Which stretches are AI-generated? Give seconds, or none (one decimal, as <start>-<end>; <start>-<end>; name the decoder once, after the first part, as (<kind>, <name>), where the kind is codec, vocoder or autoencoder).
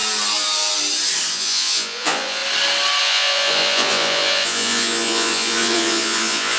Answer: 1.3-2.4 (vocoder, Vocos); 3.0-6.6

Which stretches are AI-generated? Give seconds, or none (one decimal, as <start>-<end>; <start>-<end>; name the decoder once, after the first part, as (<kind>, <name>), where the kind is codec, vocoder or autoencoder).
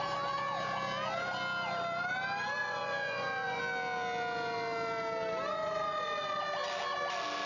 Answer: 2.6-3.6 (vocoder, Vocos); 5.5-6.4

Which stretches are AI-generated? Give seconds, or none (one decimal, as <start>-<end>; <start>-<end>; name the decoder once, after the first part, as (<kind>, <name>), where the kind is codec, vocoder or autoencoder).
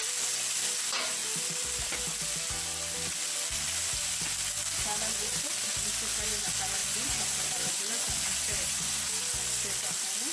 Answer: 6.8-9.1 (vocoder, Vocos)